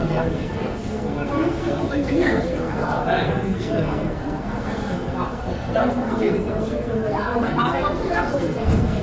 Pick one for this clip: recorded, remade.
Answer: remade